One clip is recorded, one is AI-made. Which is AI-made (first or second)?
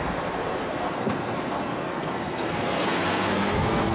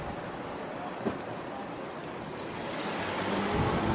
first